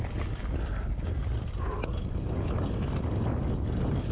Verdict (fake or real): real